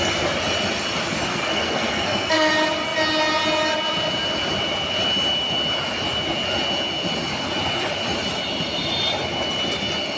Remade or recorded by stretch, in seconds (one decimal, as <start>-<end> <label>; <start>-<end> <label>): 0.0-1.3 recorded; 1.3-2.5 remade; 2.5-10.2 recorded